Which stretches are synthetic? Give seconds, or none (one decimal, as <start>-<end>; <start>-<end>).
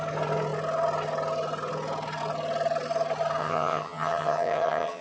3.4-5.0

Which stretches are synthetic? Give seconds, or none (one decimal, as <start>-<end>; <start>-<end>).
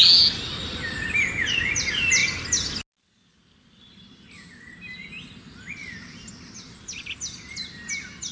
none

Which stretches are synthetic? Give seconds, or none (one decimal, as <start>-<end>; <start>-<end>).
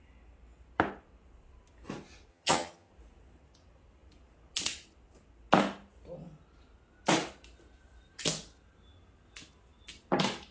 2.3-2.9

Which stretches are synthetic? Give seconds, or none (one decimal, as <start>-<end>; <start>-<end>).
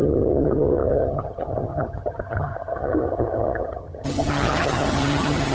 0.0-5.5